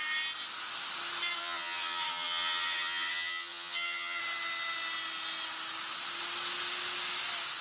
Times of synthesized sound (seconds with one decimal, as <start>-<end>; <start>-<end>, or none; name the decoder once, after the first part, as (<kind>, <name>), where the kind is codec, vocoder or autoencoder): 1.4-4.2 (vocoder, HiFi-GAN)